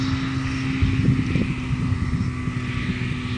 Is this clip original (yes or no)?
yes